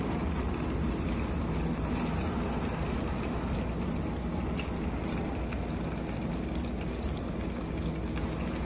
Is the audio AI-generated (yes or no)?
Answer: no